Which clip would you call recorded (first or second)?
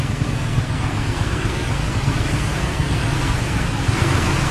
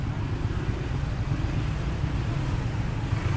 second